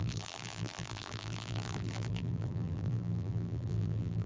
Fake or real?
fake